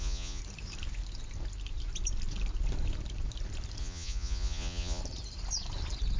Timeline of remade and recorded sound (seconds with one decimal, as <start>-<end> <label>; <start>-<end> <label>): 0.0-0.4 remade; 0.4-3.8 recorded; 3.8-5.0 remade; 5.0-6.2 recorded